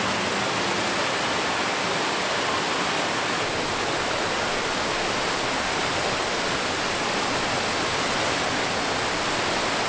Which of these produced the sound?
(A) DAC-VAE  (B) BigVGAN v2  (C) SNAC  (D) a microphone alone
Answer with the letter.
D